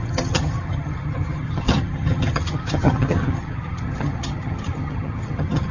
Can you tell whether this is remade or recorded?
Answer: remade